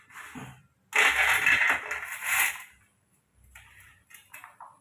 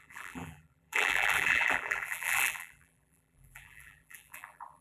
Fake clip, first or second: second